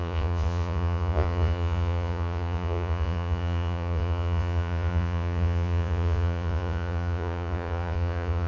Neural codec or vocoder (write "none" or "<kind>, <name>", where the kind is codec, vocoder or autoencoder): vocoder, Vocos